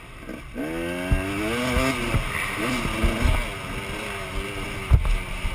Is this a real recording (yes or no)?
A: yes